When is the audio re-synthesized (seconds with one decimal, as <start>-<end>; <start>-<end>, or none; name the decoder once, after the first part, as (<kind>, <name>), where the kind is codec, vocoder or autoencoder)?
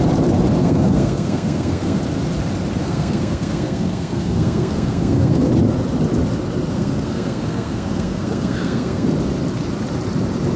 0.6-2.0 (codec, SNAC); 2.8-5.5; 6.7-9.1